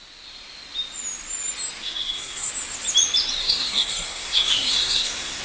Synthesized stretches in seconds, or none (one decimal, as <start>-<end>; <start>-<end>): 1.8-2.5; 3.4-5.4